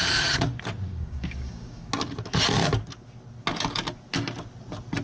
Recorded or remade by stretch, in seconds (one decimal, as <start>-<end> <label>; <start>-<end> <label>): 0.0-0.9 recorded; 0.9-1.9 remade; 1.9-5.0 recorded